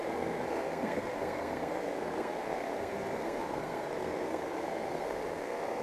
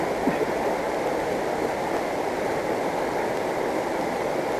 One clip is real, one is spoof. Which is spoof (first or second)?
first